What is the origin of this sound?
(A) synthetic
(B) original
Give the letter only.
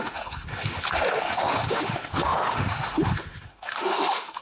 A